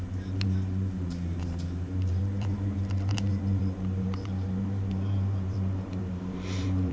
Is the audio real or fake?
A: fake